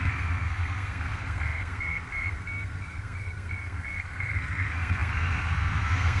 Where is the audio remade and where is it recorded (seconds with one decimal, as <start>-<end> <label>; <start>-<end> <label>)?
0.0-6.2 remade